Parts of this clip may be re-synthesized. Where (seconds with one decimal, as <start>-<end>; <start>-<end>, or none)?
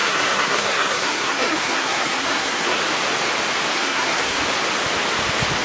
0.0-2.8; 3.7-4.4